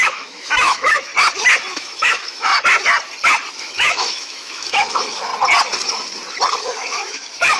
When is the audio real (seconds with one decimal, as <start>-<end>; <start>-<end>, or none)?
1.1-1.7; 2.5-3.5; 5.3-6.6